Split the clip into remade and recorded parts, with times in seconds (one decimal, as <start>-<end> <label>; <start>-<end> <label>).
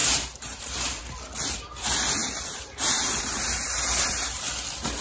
0.0-1.0 remade; 1.0-2.2 recorded; 2.2-4.5 remade; 4.5-5.0 recorded